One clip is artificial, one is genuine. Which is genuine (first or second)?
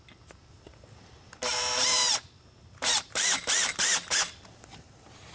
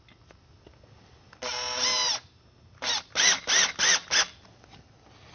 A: second